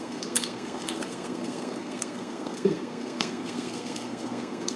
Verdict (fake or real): fake